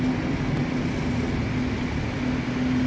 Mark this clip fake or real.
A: real